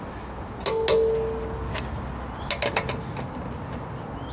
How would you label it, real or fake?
real